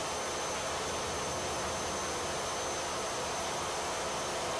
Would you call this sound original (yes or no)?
yes